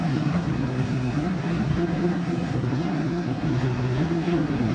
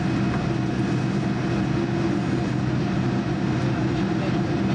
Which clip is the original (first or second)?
second